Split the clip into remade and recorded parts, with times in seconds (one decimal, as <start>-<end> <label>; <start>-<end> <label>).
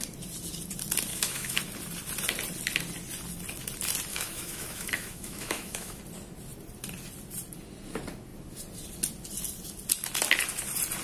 0.0-1.1 recorded; 1.1-1.6 remade; 1.6-4.1 recorded; 4.1-6.0 remade; 6.0-11.0 recorded